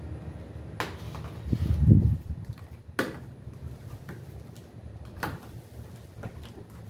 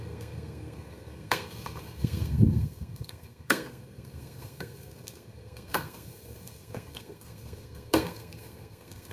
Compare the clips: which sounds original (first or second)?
first